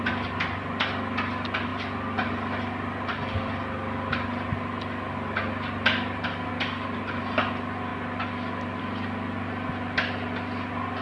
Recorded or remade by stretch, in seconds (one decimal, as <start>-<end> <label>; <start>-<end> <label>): 0.0-11.0 recorded